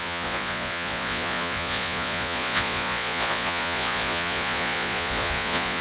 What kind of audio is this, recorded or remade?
remade